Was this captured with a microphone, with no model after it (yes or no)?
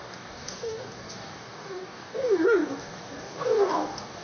no